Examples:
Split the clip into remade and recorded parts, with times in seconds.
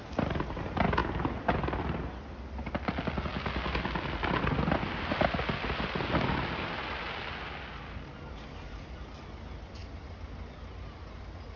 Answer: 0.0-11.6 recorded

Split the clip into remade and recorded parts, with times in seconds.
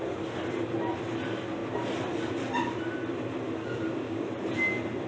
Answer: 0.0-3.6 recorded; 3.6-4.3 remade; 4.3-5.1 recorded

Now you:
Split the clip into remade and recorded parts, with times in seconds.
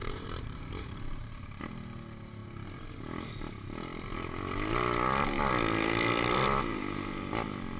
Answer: 0.0-1.6 remade; 1.6-7.8 recorded